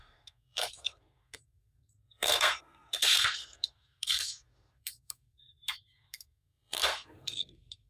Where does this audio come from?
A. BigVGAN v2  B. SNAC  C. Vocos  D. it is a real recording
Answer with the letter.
B